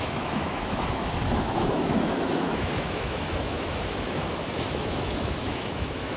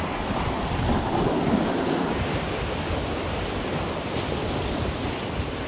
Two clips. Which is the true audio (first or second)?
second